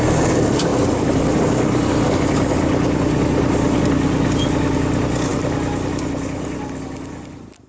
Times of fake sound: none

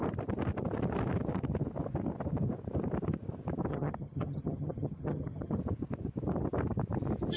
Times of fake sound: 3.7-5.6

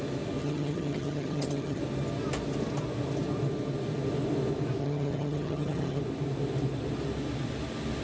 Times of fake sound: 0.4-1.8; 4.8-6.0

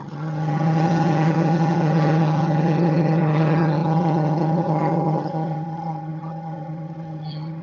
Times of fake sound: 0.0-7.6

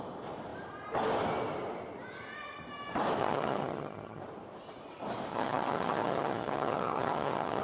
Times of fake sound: 3.2-4.2; 5.3-7.6